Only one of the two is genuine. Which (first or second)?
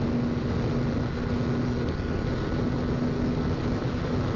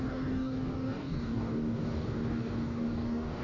first